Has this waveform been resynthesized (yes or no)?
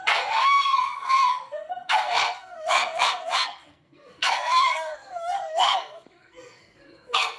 yes